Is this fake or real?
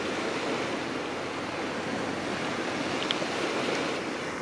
real